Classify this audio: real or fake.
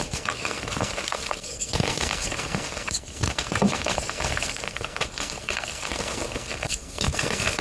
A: fake